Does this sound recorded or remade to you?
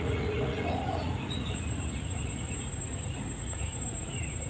remade